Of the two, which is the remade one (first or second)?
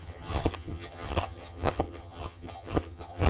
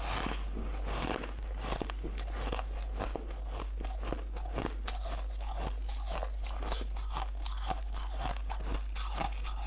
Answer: first